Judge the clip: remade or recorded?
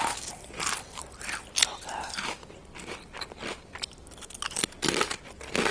recorded